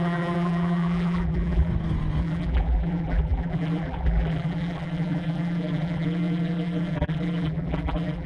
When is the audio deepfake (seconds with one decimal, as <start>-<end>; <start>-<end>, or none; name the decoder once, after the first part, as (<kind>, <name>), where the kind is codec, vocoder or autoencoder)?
0.0-1.7 (vocoder, BigVGAN v2); 2.2-8.3